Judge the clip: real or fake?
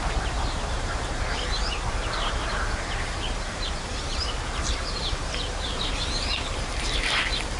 fake